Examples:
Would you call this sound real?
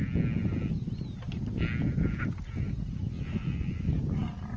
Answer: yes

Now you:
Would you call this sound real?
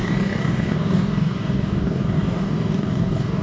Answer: no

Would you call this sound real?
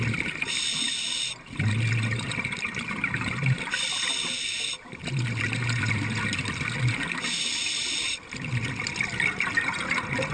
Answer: yes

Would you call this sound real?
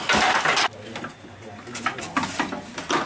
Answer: yes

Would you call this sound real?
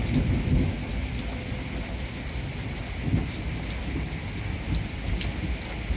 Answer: yes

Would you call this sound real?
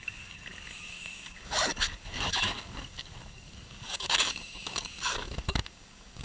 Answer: no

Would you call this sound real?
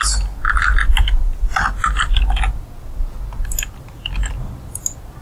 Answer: yes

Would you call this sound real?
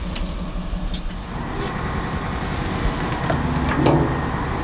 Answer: yes